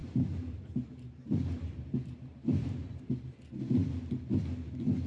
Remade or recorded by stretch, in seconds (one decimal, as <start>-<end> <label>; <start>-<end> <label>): 0.0-3.1 remade; 3.1-5.1 recorded

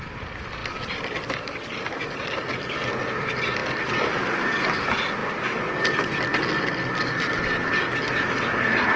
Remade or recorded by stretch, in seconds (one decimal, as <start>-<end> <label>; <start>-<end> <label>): 0.0-9.0 recorded

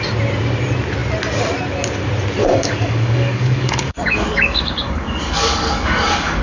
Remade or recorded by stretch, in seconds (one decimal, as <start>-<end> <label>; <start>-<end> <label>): 0.0-2.4 recorded; 2.4-6.4 remade

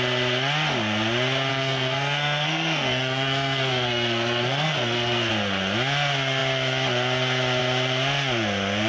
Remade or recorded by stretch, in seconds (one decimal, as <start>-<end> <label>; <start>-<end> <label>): 0.0-1.5 recorded; 1.5-5.3 remade; 5.3-8.9 recorded